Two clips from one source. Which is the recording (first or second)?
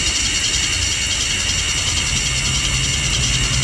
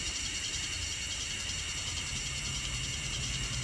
first